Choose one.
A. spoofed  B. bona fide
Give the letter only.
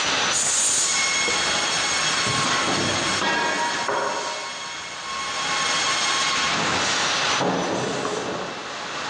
B